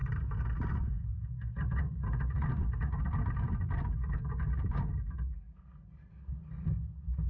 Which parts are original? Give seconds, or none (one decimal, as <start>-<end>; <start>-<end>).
0.0-7.3